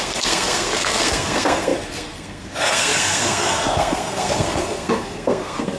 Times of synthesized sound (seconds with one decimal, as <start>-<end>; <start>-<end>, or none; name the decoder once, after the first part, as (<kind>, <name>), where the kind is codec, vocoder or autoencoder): 0.0-5.8 (codec, SNAC)

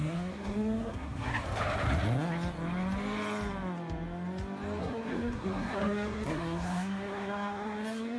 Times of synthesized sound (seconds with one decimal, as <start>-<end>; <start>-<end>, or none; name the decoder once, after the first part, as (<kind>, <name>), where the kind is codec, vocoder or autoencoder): 0.0-1.3 (codec, SNAC); 4.8-8.2